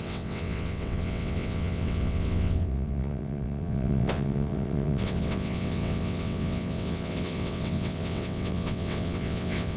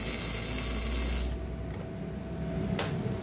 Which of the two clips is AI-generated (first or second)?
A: first